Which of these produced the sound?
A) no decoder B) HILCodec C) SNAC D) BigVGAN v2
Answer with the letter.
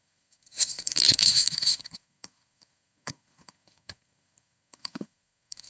C